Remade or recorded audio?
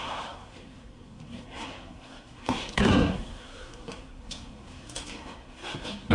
remade